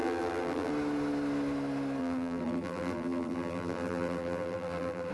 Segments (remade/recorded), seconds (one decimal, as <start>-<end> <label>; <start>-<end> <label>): 0.0-0.7 remade; 0.7-2.0 recorded; 2.0-5.1 remade